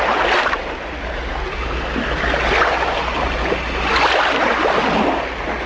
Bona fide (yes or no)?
yes